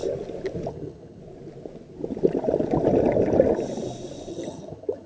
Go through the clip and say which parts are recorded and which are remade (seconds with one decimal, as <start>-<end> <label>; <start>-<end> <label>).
0.0-0.7 recorded; 0.7-1.2 remade; 1.2-4.3 recorded; 4.3-5.1 remade